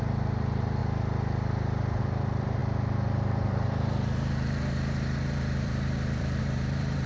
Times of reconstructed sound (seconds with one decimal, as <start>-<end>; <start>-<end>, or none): 0.0-0.8; 2.0-7.1